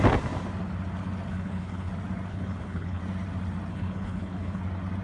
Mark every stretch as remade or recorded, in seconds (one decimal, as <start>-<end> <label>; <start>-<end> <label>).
0.0-1.3 recorded; 1.3-1.9 remade; 1.9-2.3 recorded; 2.3-3.0 remade; 3.0-3.7 recorded; 3.7-4.6 remade; 4.6-5.0 recorded